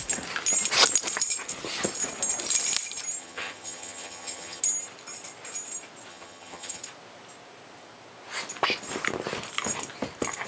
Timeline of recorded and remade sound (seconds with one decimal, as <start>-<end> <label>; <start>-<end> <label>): 0.0-3.2 recorded; 3.2-4.6 remade; 4.6-6.1 recorded; 6.1-6.8 remade; 6.8-10.5 recorded